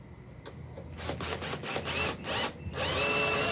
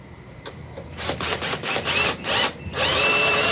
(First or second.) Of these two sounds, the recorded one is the first